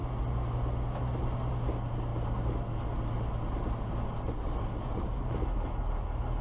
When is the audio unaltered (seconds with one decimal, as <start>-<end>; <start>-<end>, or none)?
0.0-6.4